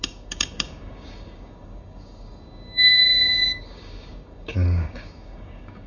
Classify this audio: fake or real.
fake